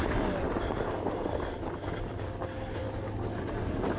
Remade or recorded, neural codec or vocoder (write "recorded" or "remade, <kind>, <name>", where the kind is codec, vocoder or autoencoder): recorded